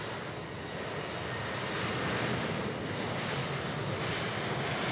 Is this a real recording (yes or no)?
yes